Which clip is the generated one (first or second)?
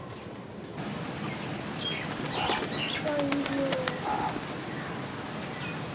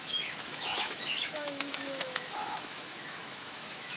second